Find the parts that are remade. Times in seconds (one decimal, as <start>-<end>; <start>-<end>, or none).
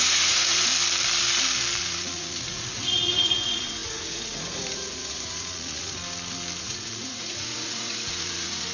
0.0-0.7; 1.8-6.0; 6.6-8.7